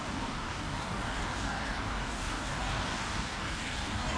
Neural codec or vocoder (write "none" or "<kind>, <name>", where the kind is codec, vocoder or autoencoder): codec, DAC